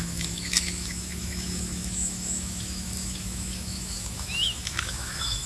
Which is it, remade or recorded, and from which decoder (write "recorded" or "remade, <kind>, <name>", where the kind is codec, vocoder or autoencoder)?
remade, autoencoder, DAC-VAE